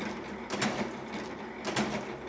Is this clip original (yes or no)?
yes